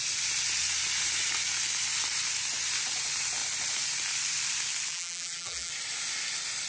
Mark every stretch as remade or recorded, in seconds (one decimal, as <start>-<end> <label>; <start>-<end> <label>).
0.0-4.9 recorded; 4.9-5.7 remade; 5.7-6.7 recorded